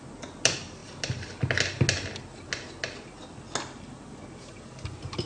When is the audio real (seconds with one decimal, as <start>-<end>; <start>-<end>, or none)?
0.0-5.3